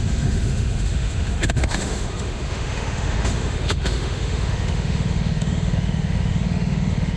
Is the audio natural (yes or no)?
no